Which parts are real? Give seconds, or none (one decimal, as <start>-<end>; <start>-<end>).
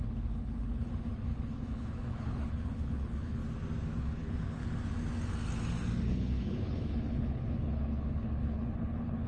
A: 3.4-4.0; 4.6-6.0